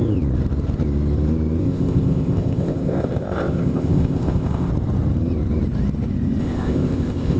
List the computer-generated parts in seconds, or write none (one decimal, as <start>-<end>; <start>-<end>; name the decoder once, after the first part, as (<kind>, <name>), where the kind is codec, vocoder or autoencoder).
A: 1.6-4.7 (codec, ZipCodec); 6.4-7.4